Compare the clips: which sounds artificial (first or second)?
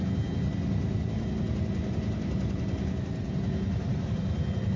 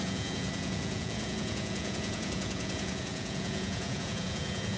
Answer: second